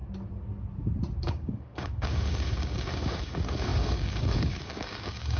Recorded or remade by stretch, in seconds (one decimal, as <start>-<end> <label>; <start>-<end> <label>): 0.0-1.2 recorded; 1.2-5.4 remade